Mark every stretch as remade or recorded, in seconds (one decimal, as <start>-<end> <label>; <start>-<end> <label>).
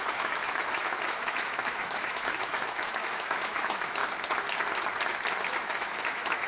0.0-4.0 remade; 4.0-5.3 recorded; 5.3-6.5 remade